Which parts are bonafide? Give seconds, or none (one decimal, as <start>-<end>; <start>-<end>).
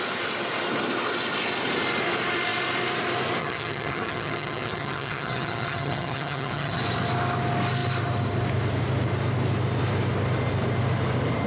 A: 0.0-3.4; 6.8-11.5